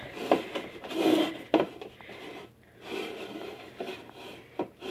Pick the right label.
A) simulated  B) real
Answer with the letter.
A